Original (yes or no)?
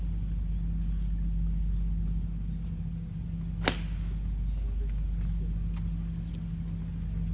yes